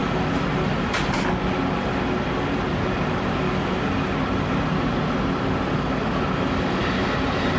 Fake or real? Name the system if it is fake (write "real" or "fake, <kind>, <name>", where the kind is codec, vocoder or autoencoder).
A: real